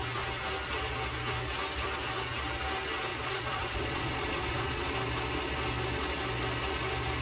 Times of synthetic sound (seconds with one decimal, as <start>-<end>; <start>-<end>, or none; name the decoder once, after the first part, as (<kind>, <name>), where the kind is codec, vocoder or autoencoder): 3.1-4.9 (vocoder, Vocos)